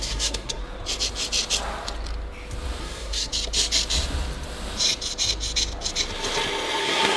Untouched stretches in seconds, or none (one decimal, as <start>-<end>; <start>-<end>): 0.6-2.8; 3.3-6.8